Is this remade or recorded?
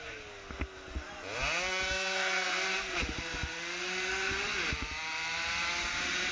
recorded